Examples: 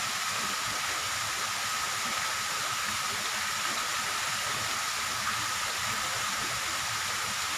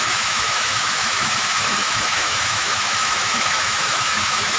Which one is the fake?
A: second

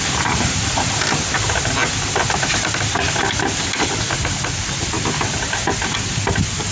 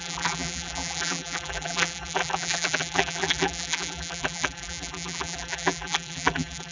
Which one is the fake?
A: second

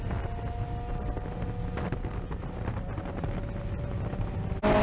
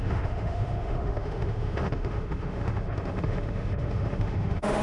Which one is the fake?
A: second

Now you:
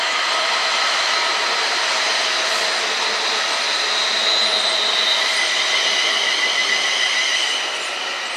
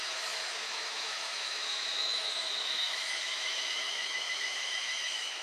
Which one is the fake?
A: second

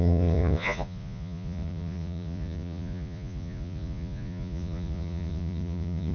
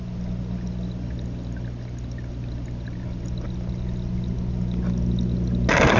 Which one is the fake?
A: first